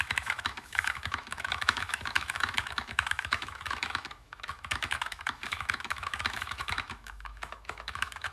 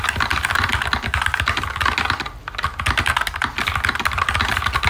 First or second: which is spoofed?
first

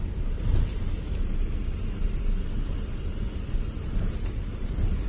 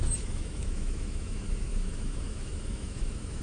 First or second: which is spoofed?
second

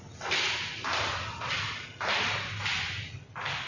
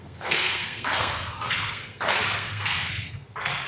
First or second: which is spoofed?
second